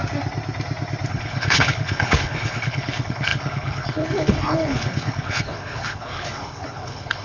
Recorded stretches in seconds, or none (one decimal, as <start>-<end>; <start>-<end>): 0.0-1.1